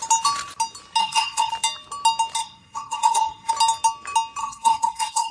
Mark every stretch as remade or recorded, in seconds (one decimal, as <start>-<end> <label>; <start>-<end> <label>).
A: 0.0-1.0 recorded; 1.0-1.5 remade; 1.5-2.4 recorded; 2.4-3.5 remade; 3.5-4.4 recorded; 4.4-5.3 remade